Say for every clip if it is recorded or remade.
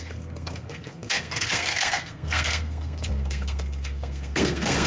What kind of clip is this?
remade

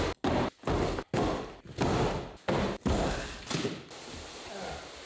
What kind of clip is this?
recorded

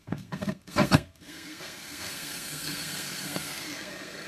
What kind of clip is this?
remade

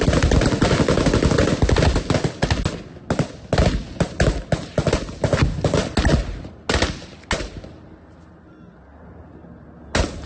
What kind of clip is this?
recorded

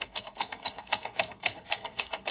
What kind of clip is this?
remade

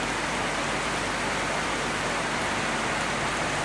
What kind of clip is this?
recorded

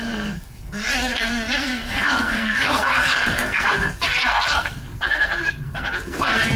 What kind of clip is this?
remade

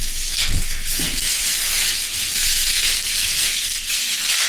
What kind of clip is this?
remade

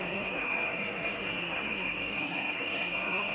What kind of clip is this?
remade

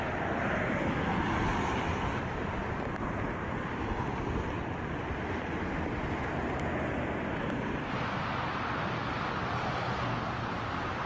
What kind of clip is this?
recorded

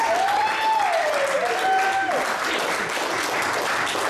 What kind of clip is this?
recorded